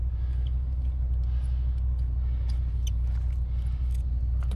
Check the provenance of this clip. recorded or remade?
recorded